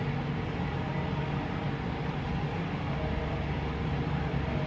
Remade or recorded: recorded